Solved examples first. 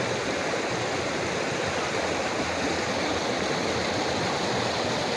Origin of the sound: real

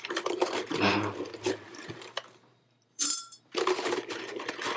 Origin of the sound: fake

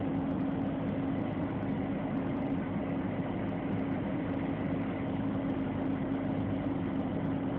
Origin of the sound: real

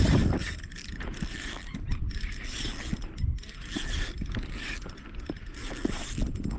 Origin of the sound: fake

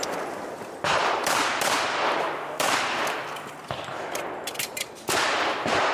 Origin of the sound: fake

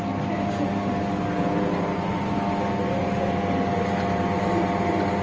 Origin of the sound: real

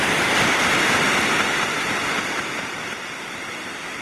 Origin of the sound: fake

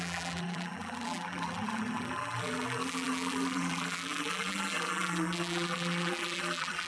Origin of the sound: fake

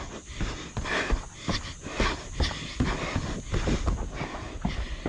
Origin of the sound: real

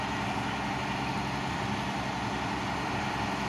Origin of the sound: real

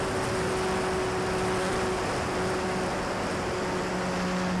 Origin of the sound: real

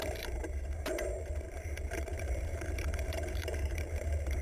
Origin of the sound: fake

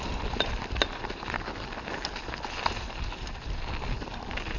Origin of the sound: real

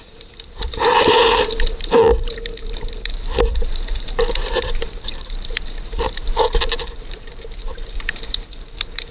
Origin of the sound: fake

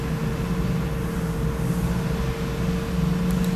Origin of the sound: real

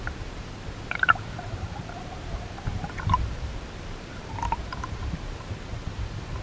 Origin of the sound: fake